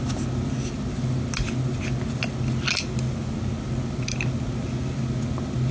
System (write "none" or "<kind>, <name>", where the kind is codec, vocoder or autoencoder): none